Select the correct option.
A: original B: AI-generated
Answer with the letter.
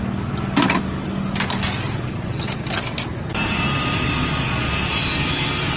A